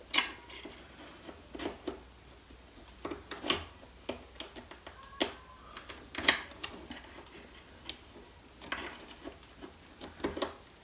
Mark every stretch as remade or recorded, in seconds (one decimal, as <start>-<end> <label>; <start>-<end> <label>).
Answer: 0.0-10.8 recorded